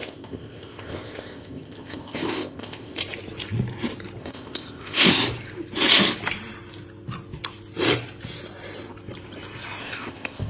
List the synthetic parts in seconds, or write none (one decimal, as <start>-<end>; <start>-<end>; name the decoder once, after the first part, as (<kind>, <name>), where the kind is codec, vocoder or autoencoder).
0.0-3.0 (codec, ZipCodec); 4.2-5.2; 9.8-10.5